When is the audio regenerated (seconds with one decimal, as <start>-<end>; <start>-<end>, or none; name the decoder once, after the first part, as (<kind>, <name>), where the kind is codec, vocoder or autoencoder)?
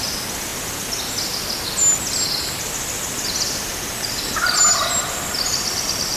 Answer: none